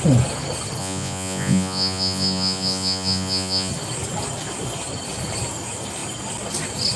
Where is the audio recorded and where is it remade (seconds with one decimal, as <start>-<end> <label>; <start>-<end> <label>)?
0.0-0.8 recorded; 0.8-3.7 remade; 3.7-7.0 recorded